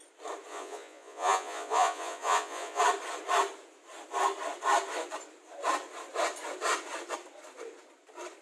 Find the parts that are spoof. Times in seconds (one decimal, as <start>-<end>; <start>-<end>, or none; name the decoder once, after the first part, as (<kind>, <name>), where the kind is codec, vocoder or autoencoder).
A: 0.5-2.8 (vocoder, Vocos)